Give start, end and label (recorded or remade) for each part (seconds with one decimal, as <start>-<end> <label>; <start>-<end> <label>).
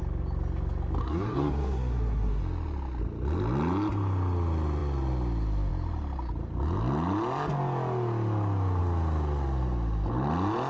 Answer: 0.0-1.0 recorded; 1.0-2.4 remade; 2.4-10.7 recorded